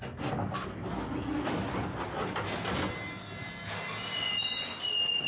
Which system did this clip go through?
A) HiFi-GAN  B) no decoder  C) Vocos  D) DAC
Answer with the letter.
B